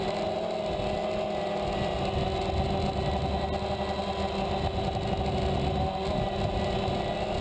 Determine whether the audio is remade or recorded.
recorded